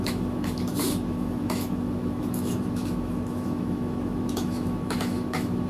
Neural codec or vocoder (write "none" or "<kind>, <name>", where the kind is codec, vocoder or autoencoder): autoencoder, DAC-VAE